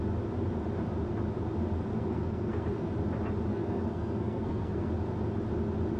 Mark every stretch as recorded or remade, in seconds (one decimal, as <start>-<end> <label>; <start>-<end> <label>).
0.0-1.9 recorded; 1.9-2.9 remade; 2.9-3.5 recorded; 3.5-4.9 remade; 4.9-6.0 recorded

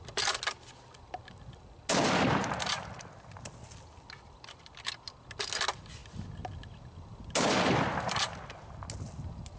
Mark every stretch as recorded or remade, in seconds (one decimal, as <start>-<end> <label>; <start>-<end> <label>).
0.0-9.6 recorded

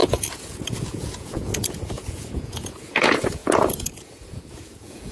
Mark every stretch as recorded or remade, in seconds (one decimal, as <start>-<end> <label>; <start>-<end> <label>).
0.0-5.1 remade

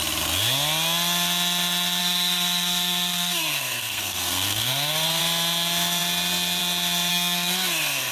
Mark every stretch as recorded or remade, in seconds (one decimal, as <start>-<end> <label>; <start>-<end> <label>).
0.0-2.0 recorded; 2.0-5.2 remade; 5.2-7.1 recorded; 7.1-8.1 remade

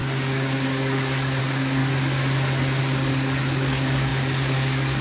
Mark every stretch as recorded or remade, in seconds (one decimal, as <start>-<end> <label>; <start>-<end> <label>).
0.0-1.8 remade; 1.8-2.8 recorded; 2.8-5.0 remade

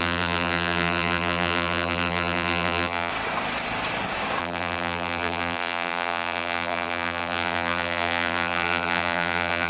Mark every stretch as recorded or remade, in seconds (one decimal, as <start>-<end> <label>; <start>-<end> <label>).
0.0-3.1 remade; 3.1-4.4 recorded; 4.4-9.7 remade

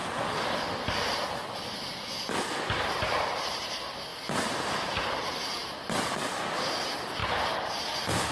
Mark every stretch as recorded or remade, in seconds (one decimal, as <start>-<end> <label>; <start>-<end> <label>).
0.0-8.3 recorded